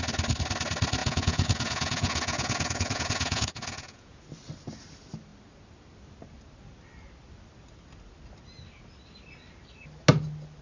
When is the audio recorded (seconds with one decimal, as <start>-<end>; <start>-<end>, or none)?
0.0-1.0; 4.2-10.6